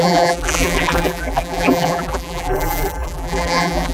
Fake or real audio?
fake